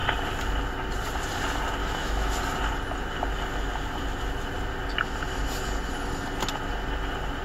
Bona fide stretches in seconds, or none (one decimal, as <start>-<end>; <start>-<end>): 0.0-1.8; 2.4-7.4